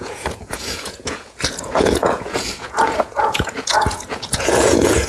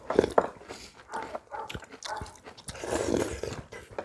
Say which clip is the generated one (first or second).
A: first